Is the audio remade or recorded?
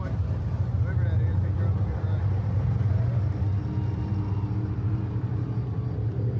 recorded